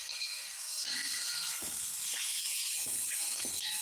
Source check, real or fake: fake